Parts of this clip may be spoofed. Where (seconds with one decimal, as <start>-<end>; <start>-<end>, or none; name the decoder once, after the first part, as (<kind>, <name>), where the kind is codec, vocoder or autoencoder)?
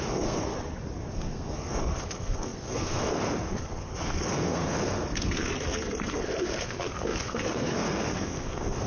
0.0-0.5 (codec, SNAC); 1.1-8.9